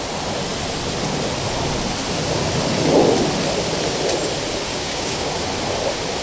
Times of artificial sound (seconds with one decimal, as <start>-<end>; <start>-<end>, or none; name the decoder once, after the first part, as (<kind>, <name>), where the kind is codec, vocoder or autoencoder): 4.7-5.3 (codec, DAC)